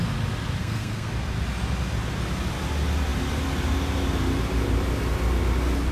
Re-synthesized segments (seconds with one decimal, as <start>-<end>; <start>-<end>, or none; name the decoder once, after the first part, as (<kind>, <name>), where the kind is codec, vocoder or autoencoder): 0.6-1.1 (codec, SNAC)